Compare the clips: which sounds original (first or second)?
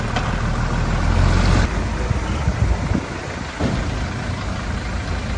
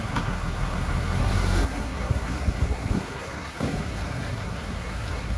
first